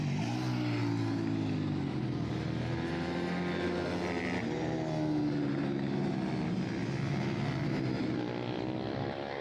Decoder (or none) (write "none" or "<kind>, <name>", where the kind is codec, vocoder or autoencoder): none